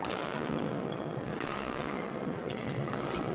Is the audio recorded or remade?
remade